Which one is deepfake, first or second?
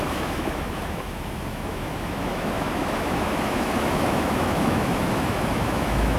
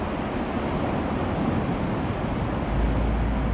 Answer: first